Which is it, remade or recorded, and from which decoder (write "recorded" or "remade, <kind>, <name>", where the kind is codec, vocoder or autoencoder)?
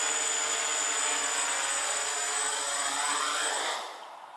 recorded